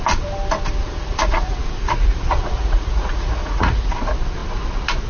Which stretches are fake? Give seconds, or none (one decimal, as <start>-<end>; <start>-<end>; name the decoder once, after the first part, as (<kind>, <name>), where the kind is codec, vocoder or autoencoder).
0.8-3.9 (vocoder, Vocos)